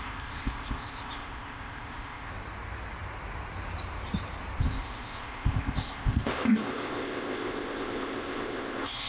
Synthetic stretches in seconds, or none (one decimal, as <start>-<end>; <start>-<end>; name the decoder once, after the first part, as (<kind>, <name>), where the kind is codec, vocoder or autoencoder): 0.0-2.3 (codec, ZipCodec); 4.6-9.1

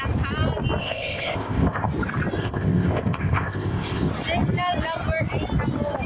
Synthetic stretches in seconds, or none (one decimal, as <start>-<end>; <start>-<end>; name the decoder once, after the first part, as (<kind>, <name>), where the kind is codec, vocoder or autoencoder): 0.8-1.9 (codec, ZipCodec); 2.4-4.1

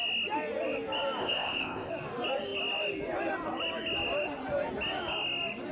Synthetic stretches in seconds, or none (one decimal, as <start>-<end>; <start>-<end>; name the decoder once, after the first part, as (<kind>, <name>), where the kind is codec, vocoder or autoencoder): 1.2-1.9 (codec, ZipCodec)

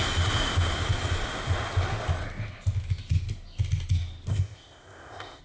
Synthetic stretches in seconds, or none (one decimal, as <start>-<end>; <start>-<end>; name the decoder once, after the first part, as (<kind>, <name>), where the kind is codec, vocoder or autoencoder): 4.3-5.4 (codec, ZipCodec)

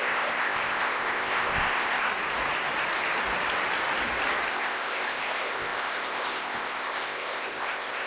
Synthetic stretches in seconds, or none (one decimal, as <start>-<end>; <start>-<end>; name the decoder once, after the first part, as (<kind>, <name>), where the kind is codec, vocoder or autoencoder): 0.0-2.1 (codec, ZipCodec); 4.5-8.1

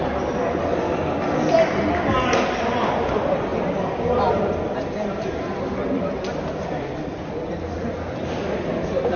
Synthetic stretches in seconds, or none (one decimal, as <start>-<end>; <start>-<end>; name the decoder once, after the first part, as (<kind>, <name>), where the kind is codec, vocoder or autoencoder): none

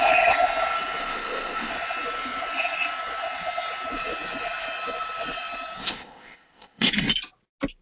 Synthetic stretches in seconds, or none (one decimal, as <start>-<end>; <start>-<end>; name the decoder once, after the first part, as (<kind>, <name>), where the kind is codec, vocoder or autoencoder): 1.0-1.7 (codec, ZipCodec); 5.8-6.9